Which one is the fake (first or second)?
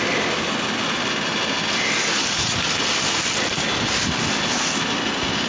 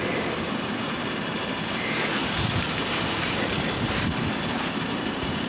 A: second